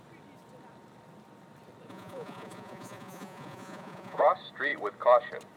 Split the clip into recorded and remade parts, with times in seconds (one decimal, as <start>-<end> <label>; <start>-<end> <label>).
0.0-1.9 recorded; 1.9-4.2 remade; 4.2-5.6 recorded